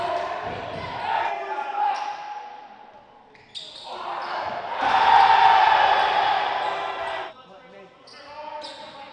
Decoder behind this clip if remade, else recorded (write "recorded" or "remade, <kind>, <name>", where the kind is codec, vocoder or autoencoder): recorded